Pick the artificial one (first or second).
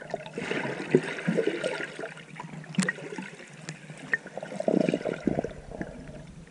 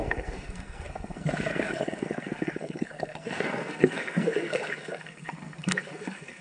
second